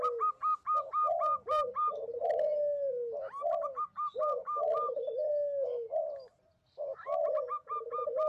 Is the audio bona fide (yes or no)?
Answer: yes